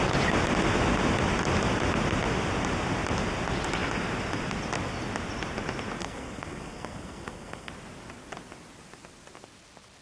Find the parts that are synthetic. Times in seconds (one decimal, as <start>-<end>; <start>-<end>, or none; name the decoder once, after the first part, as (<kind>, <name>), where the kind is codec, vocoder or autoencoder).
6.0-7.7 (codec, SNAC)

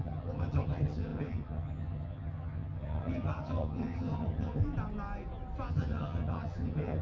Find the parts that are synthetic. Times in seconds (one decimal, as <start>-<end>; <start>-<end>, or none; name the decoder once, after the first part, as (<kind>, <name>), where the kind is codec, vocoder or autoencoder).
0.0-4.6 (vocoder, HiFi-GAN); 5.7-7.0

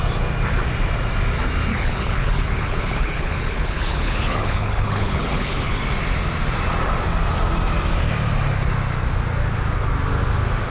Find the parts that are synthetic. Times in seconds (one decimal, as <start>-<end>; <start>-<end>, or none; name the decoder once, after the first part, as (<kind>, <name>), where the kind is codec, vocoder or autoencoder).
1.7-5.7 (codec, HILCodec)